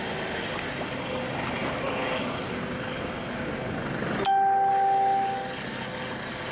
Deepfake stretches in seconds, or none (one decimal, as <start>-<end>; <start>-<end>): none